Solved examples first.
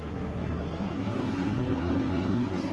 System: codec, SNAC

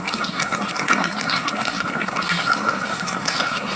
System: codec, SNAC